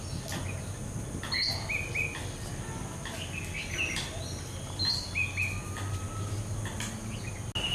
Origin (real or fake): real